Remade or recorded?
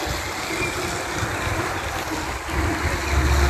recorded